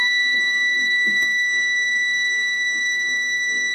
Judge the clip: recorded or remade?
remade